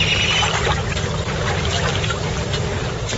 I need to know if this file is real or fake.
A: real